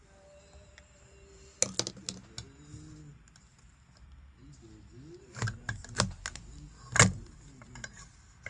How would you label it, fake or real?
real